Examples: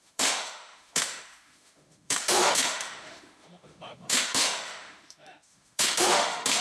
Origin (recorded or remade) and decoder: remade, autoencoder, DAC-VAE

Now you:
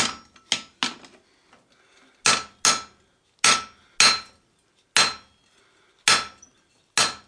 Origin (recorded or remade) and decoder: recorded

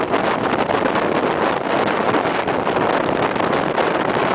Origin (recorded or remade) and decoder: recorded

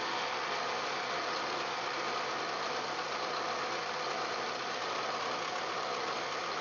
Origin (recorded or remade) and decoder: recorded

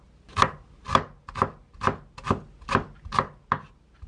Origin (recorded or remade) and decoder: recorded